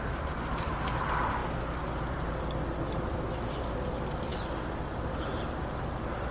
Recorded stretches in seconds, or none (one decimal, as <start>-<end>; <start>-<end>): 0.0-6.3